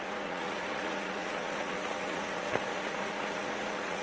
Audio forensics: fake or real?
fake